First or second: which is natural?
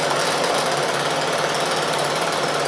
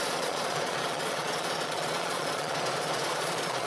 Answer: first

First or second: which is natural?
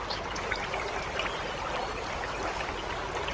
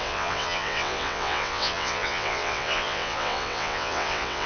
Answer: first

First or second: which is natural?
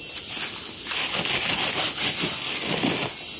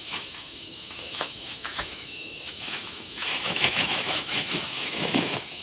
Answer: first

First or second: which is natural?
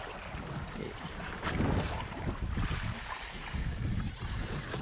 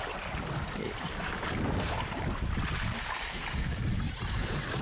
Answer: first